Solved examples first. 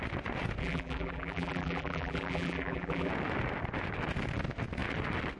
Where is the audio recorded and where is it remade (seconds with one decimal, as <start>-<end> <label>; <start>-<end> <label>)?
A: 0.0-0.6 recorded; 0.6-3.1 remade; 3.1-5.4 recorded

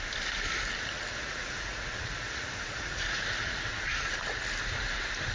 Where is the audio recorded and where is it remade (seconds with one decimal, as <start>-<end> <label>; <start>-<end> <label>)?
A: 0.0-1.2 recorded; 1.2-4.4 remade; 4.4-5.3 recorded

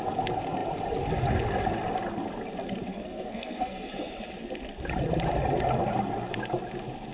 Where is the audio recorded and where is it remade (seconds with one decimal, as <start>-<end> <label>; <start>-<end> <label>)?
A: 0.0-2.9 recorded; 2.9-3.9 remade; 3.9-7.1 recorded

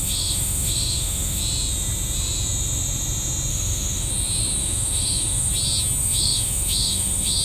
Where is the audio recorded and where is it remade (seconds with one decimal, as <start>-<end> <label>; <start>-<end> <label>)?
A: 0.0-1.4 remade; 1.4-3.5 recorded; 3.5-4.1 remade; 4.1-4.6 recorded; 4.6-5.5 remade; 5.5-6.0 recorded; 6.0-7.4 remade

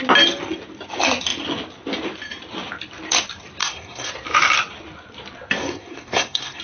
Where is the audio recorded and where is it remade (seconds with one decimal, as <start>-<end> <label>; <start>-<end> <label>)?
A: 0.0-3.6 recorded; 3.6-4.1 remade; 4.1-5.6 recorded; 5.6-6.6 remade